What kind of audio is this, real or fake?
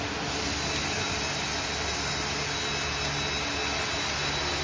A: real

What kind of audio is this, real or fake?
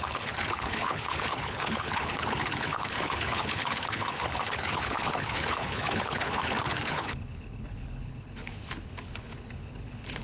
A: fake